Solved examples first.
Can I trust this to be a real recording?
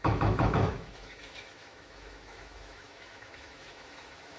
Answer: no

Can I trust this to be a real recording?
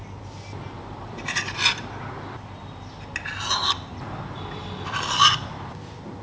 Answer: yes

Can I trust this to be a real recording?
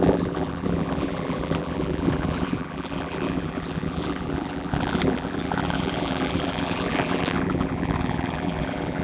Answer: no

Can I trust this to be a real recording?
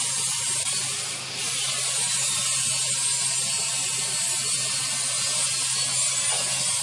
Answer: yes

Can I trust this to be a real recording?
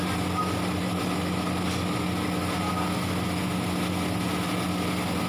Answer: yes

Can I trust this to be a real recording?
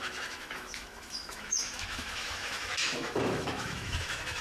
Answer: no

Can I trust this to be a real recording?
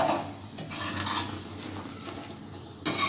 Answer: yes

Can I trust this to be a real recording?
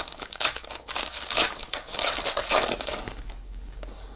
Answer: no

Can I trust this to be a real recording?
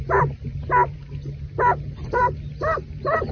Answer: yes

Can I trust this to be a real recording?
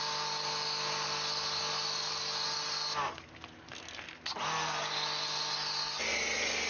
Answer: yes